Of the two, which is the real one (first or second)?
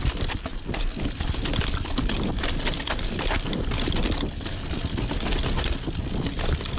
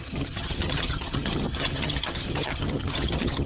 first